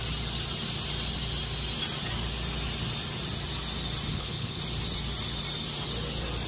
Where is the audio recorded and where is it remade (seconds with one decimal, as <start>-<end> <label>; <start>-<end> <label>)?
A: 0.0-4.1 recorded; 4.1-4.6 remade; 4.6-6.5 recorded